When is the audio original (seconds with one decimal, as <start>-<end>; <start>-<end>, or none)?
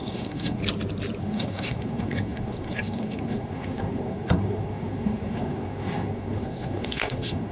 0.6-1.2